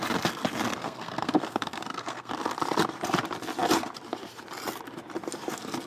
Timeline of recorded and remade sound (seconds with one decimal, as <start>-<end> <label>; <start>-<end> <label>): 0.0-0.8 recorded; 0.8-2.3 remade; 2.3-5.9 recorded